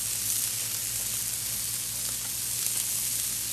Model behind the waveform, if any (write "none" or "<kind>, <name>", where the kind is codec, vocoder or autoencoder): none